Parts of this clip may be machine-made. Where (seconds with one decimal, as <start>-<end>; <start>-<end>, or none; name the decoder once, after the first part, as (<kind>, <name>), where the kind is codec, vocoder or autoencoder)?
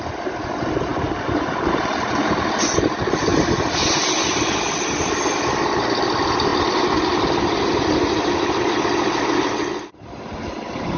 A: none